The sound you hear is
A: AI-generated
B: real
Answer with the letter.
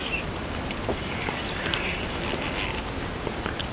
B